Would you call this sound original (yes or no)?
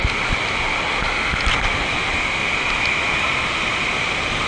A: yes